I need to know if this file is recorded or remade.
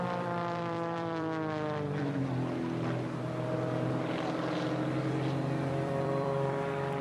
remade